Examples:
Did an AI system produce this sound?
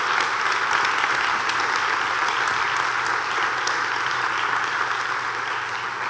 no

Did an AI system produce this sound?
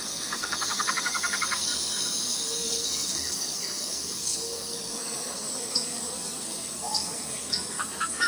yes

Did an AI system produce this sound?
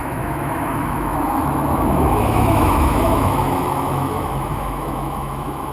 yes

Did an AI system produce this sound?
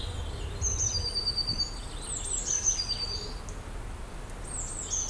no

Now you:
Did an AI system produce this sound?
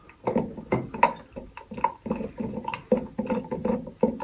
no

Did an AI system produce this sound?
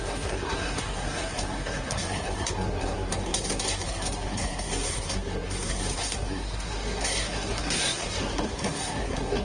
yes